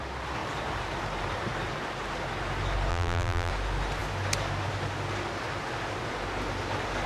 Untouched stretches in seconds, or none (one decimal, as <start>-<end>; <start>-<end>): 0.0-2.9; 3.5-7.1